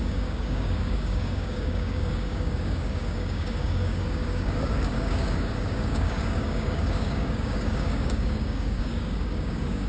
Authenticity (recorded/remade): remade